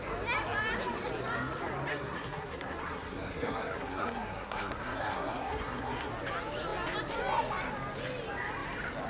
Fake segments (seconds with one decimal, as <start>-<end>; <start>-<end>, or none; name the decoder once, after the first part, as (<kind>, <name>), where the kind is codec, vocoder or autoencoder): 1.9-6.1 (codec, SNAC)